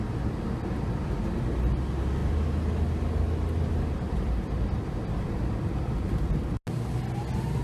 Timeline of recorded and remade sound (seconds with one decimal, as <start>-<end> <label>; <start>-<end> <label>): 0.0-7.6 recorded